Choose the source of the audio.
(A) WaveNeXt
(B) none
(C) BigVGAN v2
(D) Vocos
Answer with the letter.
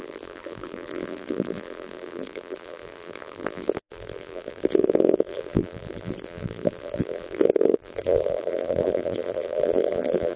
C